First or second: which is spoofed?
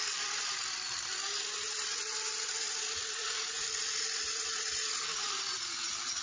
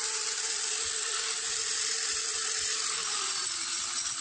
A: second